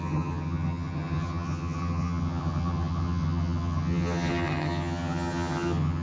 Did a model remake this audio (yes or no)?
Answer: yes